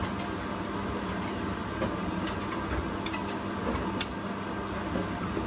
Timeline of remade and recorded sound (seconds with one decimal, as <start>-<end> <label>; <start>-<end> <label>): 0.0-5.5 recorded